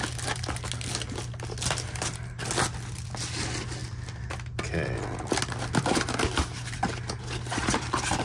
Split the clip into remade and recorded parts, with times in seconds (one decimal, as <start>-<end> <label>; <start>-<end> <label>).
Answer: 0.0-8.2 recorded